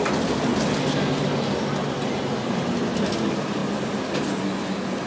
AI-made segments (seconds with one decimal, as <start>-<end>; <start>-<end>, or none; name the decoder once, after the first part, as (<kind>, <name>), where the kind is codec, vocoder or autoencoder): none